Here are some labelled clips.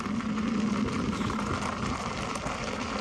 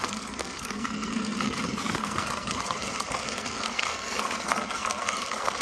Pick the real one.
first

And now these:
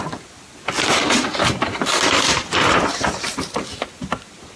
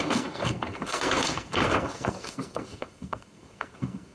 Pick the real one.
first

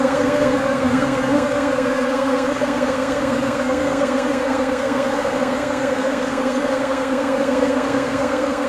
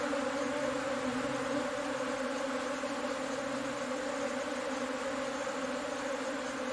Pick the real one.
second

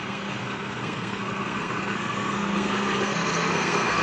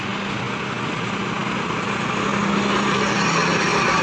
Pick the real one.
second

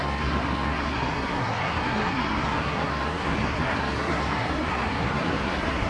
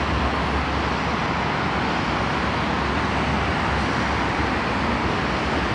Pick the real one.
second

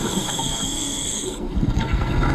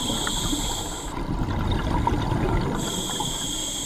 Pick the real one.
second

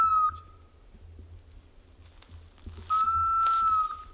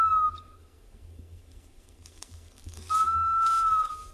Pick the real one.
first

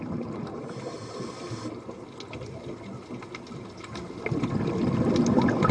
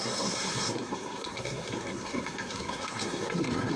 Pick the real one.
first